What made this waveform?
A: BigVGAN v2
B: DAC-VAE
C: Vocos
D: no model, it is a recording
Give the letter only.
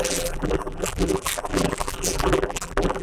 A